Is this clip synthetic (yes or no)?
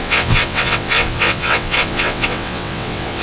yes